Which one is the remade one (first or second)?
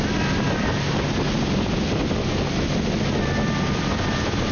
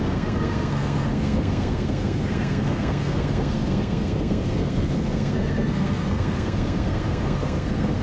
second